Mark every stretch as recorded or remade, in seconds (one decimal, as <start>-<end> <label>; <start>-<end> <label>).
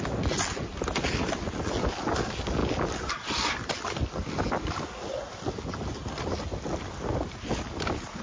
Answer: 0.0-8.2 recorded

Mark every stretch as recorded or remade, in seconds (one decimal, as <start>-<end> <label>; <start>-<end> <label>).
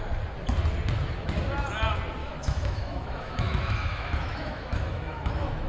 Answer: 0.0-2.2 recorded; 2.2-5.7 remade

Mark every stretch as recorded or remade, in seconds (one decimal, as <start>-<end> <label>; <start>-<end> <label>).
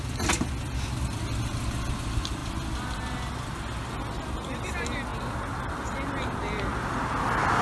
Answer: 0.0-5.1 recorded; 5.1-5.9 remade; 5.9-7.6 recorded